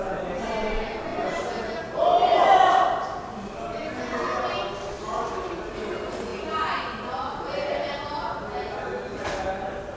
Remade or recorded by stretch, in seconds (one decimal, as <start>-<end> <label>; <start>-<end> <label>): 0.0-10.0 recorded